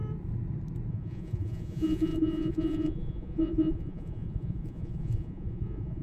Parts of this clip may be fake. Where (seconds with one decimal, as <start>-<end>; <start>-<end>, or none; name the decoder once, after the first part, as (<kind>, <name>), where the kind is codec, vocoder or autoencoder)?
0.9-6.0 (vocoder, Vocos)